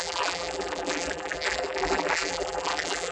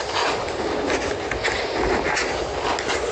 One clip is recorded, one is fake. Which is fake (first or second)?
first